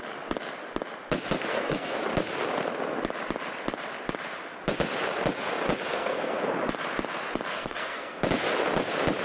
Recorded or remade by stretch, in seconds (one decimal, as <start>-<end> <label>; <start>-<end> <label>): 0.0-1.5 recorded; 1.5-2.0 remade; 2.0-5.9 recorded; 5.9-6.4 remade; 6.4-7.5 recorded; 7.5-8.2 remade; 8.2-9.2 recorded